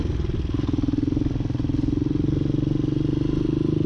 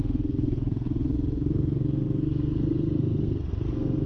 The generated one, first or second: second